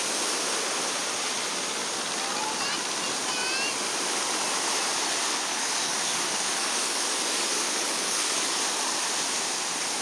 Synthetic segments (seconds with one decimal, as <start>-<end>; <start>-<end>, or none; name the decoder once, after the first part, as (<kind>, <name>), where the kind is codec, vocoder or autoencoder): 5.5-8.6 (codec, DAC)